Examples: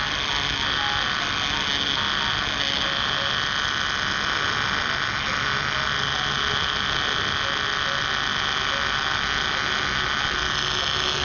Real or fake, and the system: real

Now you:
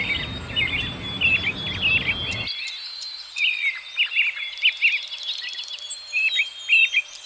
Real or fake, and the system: real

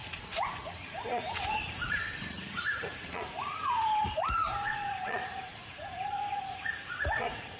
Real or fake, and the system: fake, vocoder, Vocos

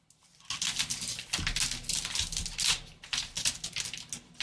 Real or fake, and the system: real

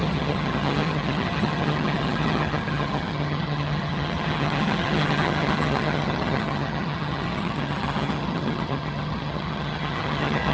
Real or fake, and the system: fake, vocoder, HiFi-GAN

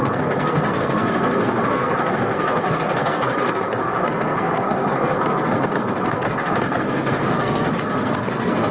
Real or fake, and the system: fake, codec, SNAC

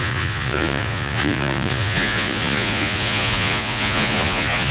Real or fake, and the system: fake, vocoder, Vocos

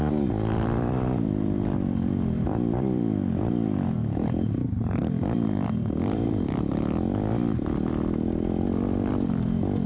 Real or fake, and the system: fake, vocoder, BigVGAN v2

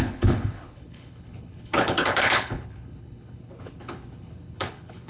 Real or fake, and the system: fake, codec, HILCodec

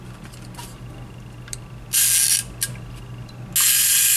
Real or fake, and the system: real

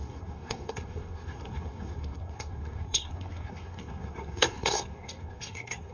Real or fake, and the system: fake, codec, SNAC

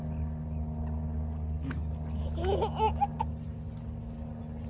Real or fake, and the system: real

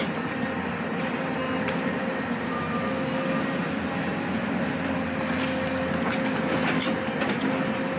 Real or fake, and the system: real